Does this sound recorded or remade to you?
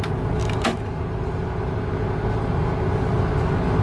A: recorded